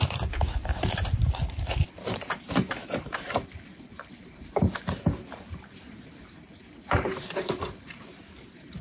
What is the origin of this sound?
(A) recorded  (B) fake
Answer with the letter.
B